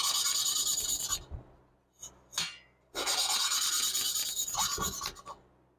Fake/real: real